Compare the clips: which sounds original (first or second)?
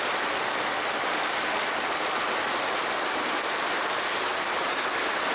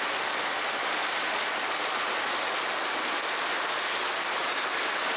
second